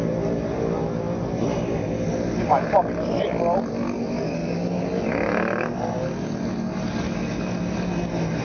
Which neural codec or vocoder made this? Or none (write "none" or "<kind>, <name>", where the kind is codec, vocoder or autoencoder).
none